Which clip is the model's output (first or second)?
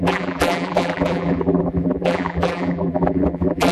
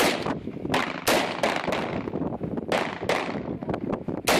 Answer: first